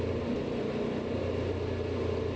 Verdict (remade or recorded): recorded